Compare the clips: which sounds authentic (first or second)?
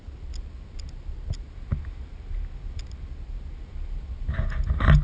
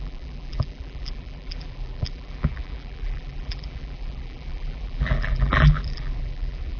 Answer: first